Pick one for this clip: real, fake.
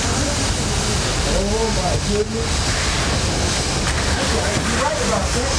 real